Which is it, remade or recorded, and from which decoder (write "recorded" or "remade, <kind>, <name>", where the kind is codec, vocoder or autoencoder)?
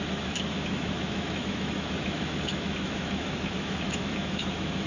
remade, autoencoder, DAC-VAE